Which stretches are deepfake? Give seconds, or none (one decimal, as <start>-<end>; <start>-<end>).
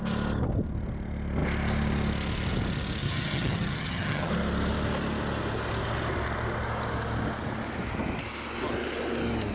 3.0-4.3